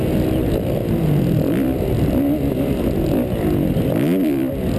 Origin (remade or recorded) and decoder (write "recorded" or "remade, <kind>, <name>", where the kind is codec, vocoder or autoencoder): recorded